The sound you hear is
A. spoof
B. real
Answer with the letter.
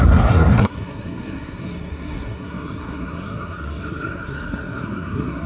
A